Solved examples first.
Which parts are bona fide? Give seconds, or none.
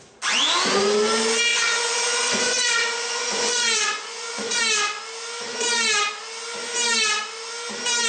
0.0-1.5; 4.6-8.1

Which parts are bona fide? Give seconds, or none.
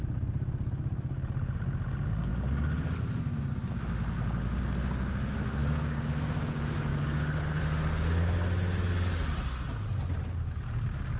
0.0-11.2